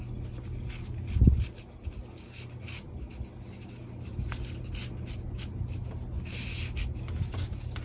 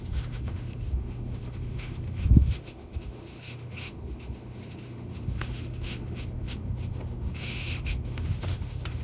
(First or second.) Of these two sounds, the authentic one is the first